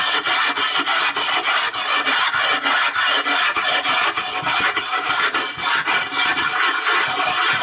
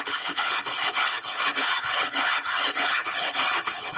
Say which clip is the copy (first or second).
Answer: second